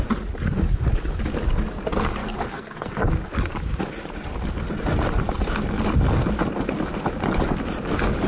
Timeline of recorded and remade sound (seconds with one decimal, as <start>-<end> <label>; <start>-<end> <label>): 0.0-2.2 recorded; 2.2-2.9 remade; 2.9-8.3 recorded